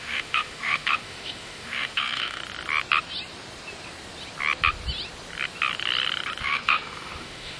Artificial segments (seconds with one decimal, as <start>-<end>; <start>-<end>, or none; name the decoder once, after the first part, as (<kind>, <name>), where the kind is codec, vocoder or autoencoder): 0.0-2.4 (autoencoder, DAC-VAE); 6.4-7.6